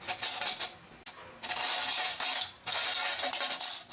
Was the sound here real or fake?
real